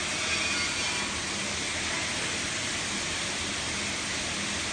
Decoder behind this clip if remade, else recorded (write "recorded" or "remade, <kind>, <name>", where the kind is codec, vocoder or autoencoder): recorded